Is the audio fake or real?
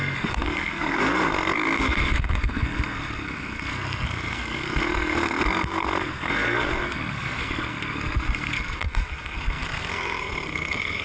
fake